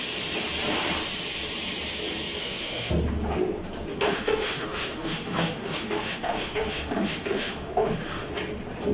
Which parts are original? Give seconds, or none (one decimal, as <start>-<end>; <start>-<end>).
0.0-2.4; 2.9-3.9; 8.3-8.9